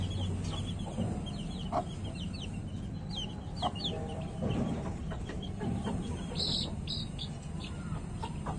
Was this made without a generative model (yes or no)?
yes